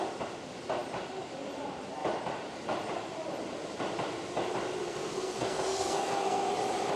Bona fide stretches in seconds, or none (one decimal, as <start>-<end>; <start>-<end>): 0.0-4.8; 6.5-7.0